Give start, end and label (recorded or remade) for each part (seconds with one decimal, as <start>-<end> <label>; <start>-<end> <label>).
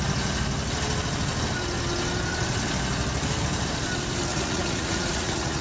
0.0-4.3 recorded; 4.3-5.6 remade